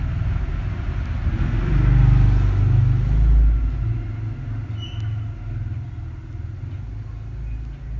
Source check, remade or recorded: recorded